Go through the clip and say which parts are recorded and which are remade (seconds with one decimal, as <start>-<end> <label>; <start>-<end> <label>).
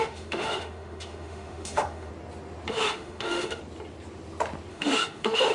0.0-2.1 remade; 2.1-2.7 recorded; 2.7-3.6 remade; 3.6-4.7 recorded; 4.7-5.5 remade